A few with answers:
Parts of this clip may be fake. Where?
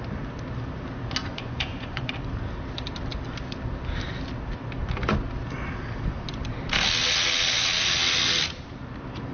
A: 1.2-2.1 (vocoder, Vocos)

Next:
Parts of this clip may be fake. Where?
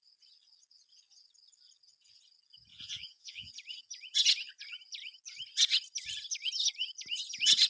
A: 2.7-3.5 (vocoder, Vocos)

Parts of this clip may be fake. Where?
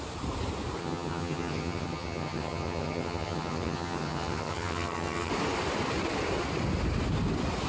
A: 0.8-5.3 (vocoder, HiFi-GAN)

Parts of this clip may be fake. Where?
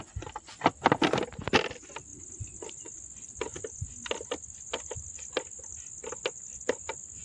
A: none